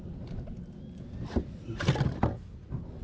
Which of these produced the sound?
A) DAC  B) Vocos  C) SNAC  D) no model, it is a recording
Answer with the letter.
D